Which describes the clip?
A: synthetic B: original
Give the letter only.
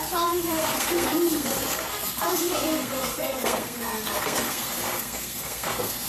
A